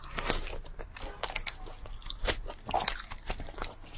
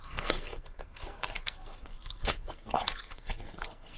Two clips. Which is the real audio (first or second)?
first